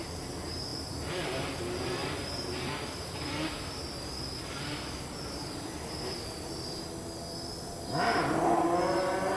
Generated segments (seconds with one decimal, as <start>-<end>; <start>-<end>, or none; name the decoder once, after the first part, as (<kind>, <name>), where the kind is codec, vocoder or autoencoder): 0.7-1.4 (vocoder, BigVGAN v2); 2.0-6.8